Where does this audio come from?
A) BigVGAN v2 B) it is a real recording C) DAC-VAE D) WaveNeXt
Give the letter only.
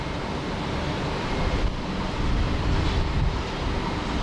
B